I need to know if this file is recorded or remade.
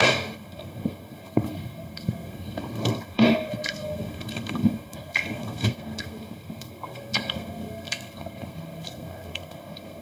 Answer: remade